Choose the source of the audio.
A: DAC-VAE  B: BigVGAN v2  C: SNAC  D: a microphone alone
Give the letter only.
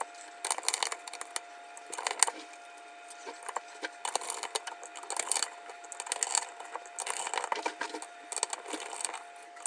D